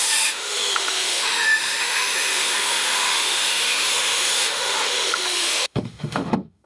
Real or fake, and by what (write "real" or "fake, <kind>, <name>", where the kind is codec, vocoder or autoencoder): fake, autoencoder, DAC-VAE